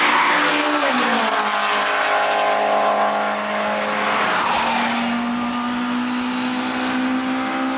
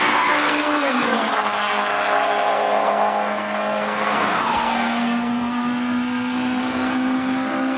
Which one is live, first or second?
first